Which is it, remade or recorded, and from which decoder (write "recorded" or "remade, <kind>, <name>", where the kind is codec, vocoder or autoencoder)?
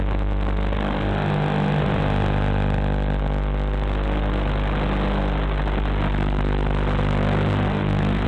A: recorded